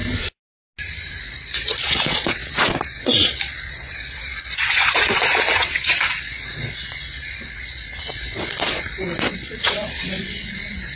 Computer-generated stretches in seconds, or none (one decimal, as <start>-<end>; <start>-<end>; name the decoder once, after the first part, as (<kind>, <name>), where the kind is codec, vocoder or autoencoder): 1.2-11.0 (vocoder, Vocos)